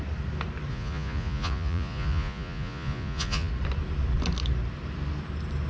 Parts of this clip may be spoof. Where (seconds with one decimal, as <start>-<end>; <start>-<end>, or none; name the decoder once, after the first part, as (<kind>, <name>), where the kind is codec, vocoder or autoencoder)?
0.7-3.5 (vocoder, Vocos)